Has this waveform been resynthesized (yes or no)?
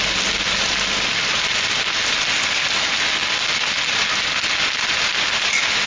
no